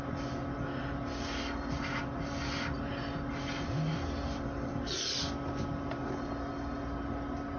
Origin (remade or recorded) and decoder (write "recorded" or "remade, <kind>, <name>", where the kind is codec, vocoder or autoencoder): recorded